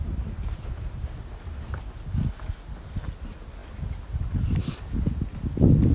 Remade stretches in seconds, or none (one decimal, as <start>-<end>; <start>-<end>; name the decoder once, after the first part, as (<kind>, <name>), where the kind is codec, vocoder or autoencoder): none